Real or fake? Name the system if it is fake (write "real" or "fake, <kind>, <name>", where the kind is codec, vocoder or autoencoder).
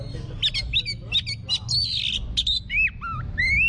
real